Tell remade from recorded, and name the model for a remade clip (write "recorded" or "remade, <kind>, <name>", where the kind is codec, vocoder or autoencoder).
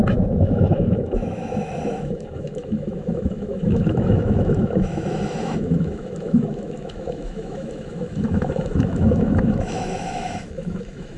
remade, autoencoder, DAC-VAE